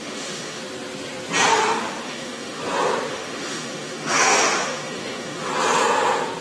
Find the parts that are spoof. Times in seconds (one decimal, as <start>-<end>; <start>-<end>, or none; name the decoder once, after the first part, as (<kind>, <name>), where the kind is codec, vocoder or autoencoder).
0.0-0.6 (autoencoder, DAC-VAE); 1.5-2.6; 3.1-5.5